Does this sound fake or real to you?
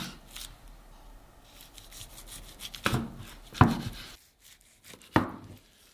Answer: real